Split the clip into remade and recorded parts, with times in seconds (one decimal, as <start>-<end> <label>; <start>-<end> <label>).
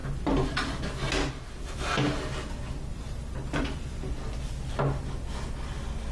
0.0-2.9 recorded; 2.9-4.5 remade; 4.5-6.1 recorded